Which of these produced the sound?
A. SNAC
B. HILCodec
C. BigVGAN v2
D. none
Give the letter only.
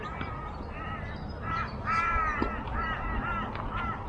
D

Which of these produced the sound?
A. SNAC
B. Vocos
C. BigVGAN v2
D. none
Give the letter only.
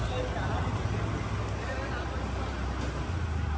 D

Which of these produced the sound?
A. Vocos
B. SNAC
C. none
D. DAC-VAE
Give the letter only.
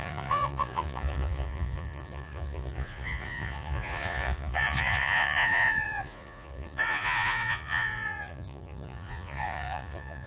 A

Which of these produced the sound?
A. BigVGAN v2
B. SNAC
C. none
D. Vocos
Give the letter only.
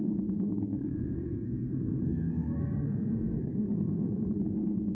B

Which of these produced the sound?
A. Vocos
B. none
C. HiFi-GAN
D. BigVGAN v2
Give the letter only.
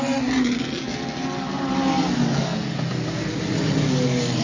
B